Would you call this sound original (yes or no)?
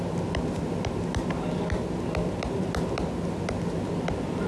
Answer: yes